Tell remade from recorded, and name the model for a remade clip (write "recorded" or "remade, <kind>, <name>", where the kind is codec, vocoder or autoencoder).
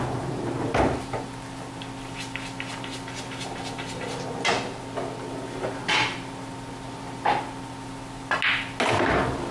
recorded